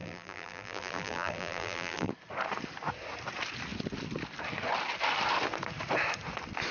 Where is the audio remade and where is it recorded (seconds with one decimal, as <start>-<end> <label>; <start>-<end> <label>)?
0.0-2.1 remade; 2.1-6.7 recorded